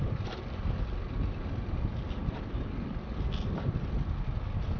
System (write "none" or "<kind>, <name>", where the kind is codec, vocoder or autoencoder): none